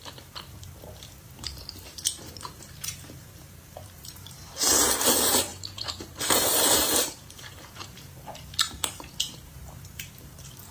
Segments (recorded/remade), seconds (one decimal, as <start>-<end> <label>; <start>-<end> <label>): 0.0-10.7 remade